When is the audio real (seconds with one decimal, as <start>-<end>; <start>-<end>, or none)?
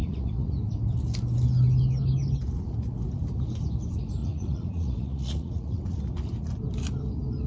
0.5-4.2; 6.0-7.5